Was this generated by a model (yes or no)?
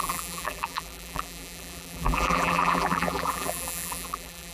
yes